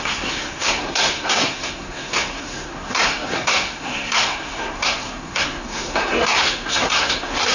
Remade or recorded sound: remade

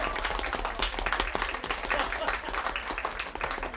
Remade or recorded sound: recorded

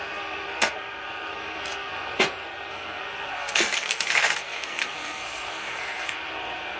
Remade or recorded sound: remade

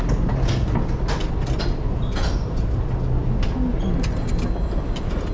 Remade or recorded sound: recorded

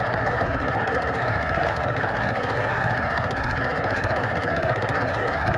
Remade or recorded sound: remade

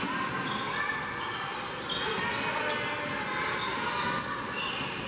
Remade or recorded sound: recorded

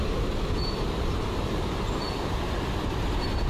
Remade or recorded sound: recorded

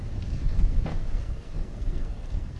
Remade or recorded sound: remade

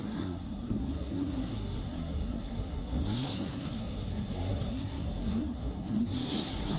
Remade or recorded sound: remade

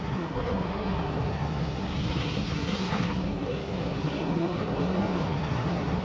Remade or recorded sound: remade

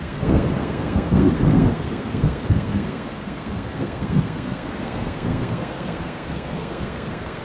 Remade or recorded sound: remade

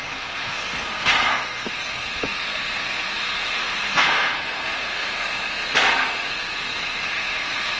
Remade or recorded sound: remade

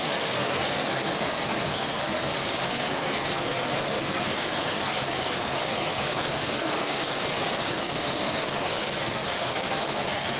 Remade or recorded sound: remade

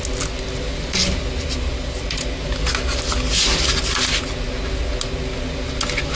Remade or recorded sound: recorded